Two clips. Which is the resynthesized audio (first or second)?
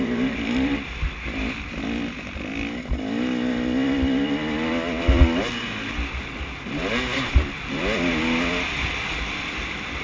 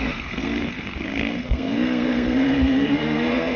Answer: second